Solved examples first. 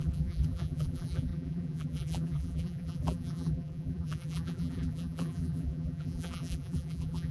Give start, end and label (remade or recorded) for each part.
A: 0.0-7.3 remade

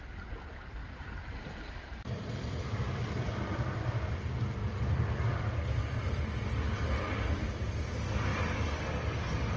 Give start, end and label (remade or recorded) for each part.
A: 0.0-0.8 recorded; 0.8-3.4 remade; 3.4-9.6 recorded

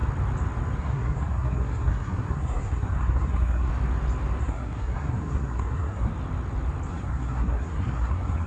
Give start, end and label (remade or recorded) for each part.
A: 0.0-0.8 recorded; 0.8-3.7 remade; 3.7-4.4 recorded; 4.4-6.1 remade; 6.1-6.9 recorded; 6.9-8.5 remade

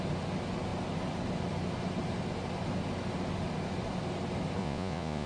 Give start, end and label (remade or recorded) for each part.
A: 0.0-4.6 recorded; 4.6-5.3 remade

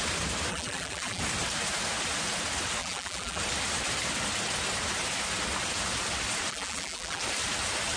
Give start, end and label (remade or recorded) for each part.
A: 0.0-0.5 recorded; 0.5-1.2 remade; 1.2-2.8 recorded; 2.8-3.4 remade; 3.4-6.5 recorded; 6.5-7.2 remade; 7.2-8.0 recorded

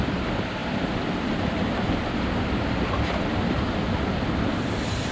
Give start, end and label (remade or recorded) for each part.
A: 0.0-5.1 recorded

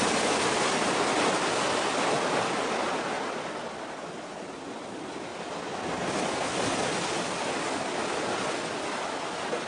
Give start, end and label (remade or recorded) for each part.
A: 0.0-9.7 recorded